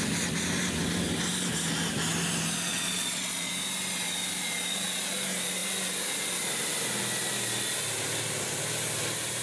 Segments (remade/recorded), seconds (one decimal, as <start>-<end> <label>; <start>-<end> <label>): 0.0-2.7 recorded; 2.7-3.5 remade; 3.5-9.4 recorded